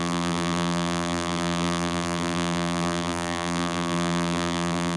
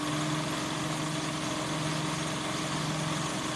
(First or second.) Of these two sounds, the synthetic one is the first